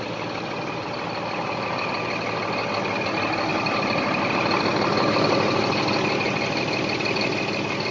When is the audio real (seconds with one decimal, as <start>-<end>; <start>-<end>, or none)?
0.0-7.9